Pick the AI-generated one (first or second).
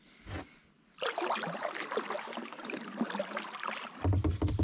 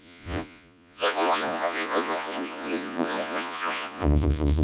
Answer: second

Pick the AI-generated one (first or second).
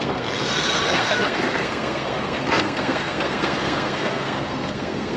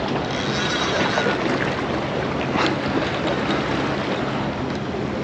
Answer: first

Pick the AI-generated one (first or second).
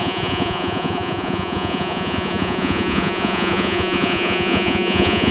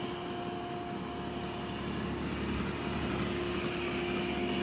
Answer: first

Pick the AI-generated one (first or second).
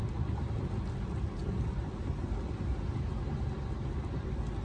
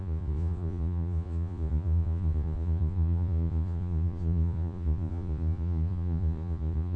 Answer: second